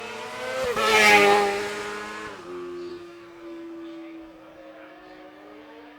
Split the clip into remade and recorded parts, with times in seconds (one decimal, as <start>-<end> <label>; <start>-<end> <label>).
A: 0.0-2.9 recorded; 2.9-6.0 remade